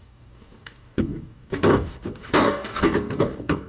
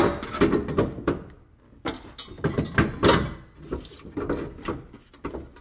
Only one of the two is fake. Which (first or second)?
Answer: first